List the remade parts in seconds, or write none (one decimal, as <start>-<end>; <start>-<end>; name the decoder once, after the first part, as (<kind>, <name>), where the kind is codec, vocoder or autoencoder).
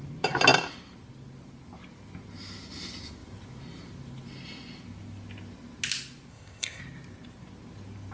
6.3-6.8 (codec, ZipCodec)